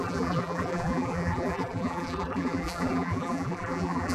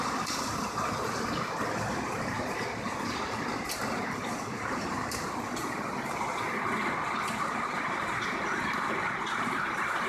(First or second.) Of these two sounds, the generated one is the first